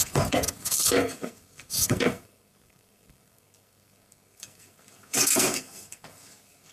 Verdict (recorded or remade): remade